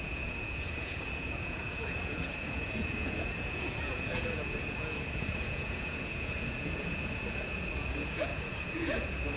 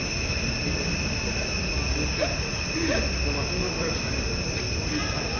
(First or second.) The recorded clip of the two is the second